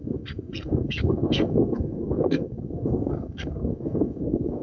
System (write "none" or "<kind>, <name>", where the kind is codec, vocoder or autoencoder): codec, SNAC